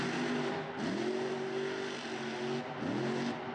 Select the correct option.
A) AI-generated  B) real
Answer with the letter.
B